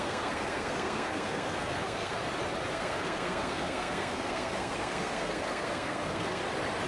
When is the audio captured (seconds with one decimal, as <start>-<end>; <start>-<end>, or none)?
2.2-2.7; 6.4-6.9